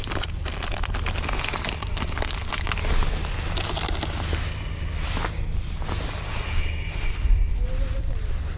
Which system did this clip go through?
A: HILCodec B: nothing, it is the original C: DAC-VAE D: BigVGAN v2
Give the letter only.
B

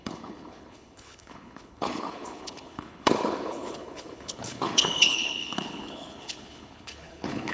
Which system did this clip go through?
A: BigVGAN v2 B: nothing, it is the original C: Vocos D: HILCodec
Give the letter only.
D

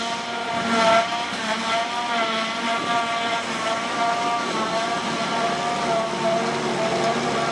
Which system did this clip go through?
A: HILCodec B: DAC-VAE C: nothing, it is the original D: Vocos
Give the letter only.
C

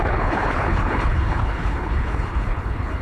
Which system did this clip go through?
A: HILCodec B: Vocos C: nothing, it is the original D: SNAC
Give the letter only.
A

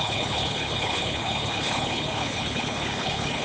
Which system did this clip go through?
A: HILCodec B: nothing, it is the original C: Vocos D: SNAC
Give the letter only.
A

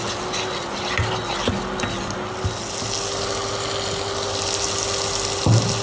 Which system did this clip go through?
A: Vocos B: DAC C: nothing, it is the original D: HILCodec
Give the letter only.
C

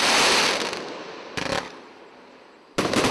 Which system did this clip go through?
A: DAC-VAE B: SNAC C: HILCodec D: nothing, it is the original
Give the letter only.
D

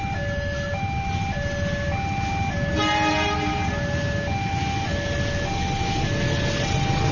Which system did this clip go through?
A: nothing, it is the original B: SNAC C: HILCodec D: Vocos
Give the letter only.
A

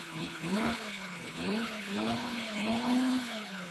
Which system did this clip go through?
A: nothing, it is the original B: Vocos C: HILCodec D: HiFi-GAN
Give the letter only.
C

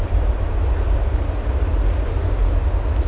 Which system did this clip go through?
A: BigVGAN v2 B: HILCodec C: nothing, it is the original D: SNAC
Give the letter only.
C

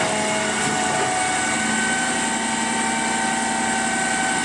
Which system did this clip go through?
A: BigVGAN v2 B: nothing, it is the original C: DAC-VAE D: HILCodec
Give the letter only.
B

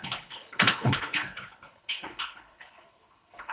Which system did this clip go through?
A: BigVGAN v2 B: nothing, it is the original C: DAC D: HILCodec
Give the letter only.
D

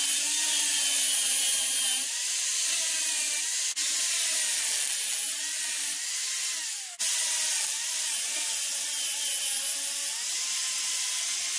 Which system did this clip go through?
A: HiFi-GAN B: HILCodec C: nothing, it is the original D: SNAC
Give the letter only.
C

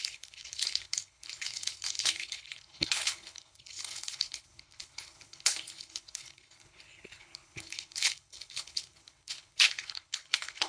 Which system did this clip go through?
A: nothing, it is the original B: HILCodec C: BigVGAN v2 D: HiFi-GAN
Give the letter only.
B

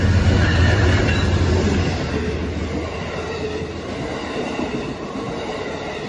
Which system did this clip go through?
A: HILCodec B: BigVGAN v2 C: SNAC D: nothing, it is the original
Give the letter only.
D